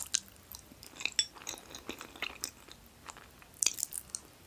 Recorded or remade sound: recorded